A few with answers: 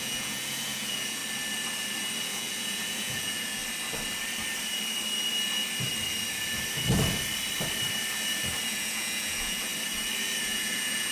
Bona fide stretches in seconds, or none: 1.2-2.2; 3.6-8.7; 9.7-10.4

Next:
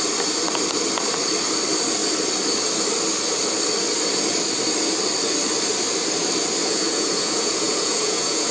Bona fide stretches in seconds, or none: 0.0-6.6

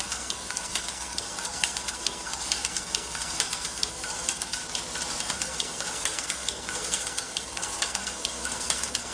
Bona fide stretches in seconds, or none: 4.6-5.2

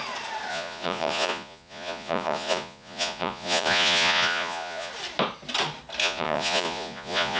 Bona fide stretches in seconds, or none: 0.0-0.5; 4.9-6.0

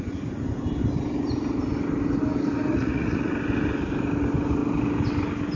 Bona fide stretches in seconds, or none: 0.0-2.7; 3.3-5.6